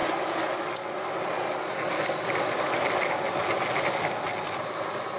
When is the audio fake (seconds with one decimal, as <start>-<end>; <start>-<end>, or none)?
none